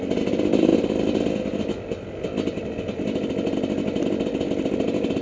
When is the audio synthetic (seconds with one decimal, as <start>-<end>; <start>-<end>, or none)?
none